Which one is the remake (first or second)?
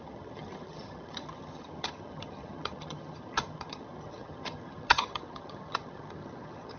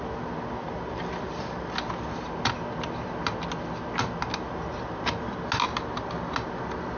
first